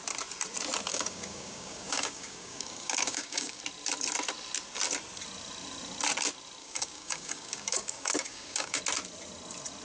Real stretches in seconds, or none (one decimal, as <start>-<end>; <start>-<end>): 0.0-0.9; 3.6-6.6; 8.8-9.8